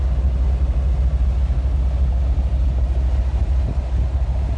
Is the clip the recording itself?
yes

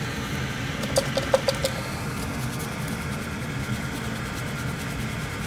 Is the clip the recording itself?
yes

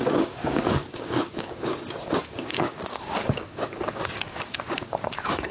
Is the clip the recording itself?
no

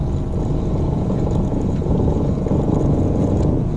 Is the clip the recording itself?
no